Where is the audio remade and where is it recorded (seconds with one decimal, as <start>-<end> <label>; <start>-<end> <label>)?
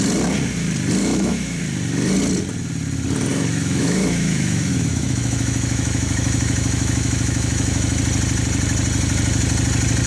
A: 0.0-1.0 recorded; 1.0-1.6 remade; 1.6-3.3 recorded; 3.3-8.0 remade; 8.0-10.1 recorded